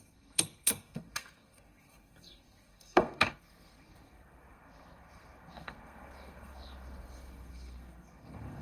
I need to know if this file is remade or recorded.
remade